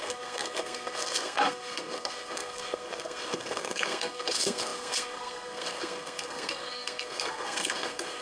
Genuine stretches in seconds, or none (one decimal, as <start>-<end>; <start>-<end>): none